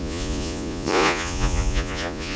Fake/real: fake